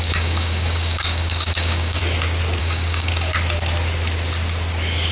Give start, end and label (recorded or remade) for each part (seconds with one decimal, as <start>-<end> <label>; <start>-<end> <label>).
0.0-2.0 remade; 2.0-2.6 recorded; 2.6-3.1 remade; 3.1-5.1 recorded